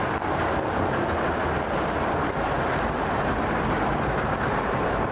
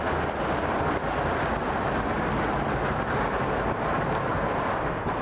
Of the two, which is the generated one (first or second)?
first